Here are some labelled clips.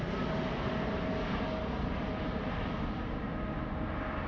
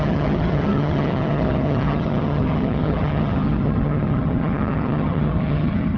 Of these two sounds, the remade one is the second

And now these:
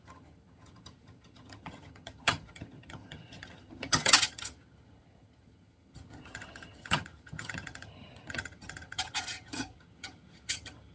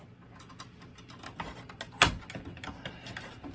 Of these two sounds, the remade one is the first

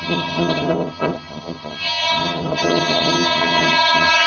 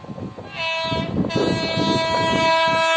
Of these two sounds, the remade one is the first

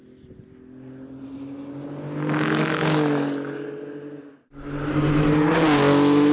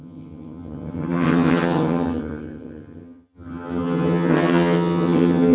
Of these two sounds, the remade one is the second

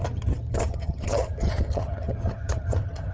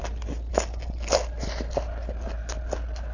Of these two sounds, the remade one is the first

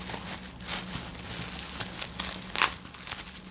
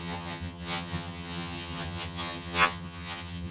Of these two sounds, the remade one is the second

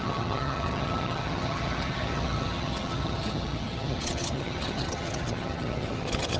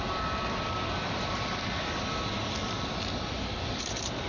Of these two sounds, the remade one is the first